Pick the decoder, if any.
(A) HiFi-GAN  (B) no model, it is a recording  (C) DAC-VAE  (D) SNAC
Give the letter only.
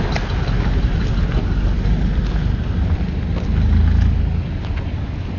B